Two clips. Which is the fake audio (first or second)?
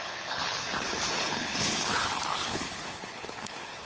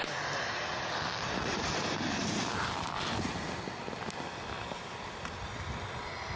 first